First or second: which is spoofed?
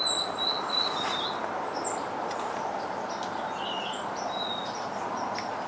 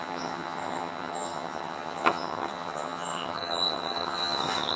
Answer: second